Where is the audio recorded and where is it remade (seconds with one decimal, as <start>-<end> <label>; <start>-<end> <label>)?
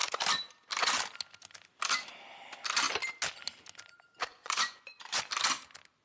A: 0.0-4.3 recorded; 4.3-5.2 remade; 5.2-6.0 recorded